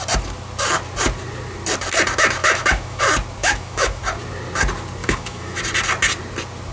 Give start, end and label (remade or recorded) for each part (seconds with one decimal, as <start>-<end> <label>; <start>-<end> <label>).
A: 0.0-2.4 recorded; 2.4-3.0 remade; 3.0-3.4 recorded; 3.4-4.0 remade; 4.0-5.0 recorded; 5.0-5.6 remade; 5.6-6.7 recorded